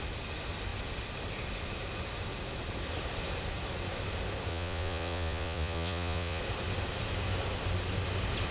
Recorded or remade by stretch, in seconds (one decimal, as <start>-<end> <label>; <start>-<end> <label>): 0.0-4.5 recorded; 4.5-6.4 remade; 6.4-8.5 recorded